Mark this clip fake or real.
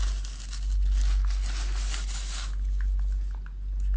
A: real